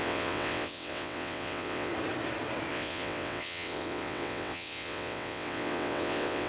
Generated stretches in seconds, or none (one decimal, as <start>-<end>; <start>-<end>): 0.0-1.9; 2.7-6.5